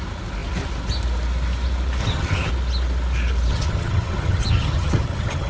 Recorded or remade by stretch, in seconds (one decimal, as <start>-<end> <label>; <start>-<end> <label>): 0.0-2.0 recorded; 2.0-2.5 remade; 2.5-3.5 recorded; 3.5-5.5 remade